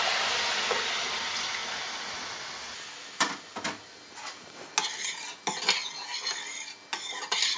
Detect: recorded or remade recorded